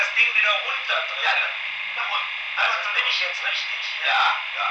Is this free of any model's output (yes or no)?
yes